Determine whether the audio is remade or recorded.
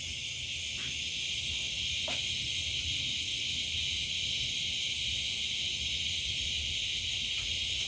recorded